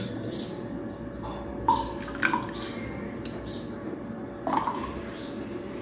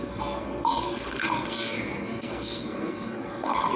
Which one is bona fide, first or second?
first